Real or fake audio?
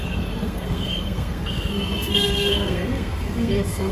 fake